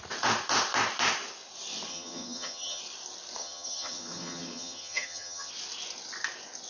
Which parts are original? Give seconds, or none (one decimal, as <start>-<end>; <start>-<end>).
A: 0.0-1.9; 2.8-3.4; 5.5-6.7